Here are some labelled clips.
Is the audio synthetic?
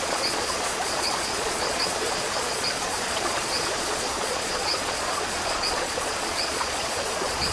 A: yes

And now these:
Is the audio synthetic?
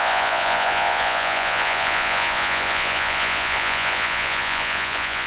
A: yes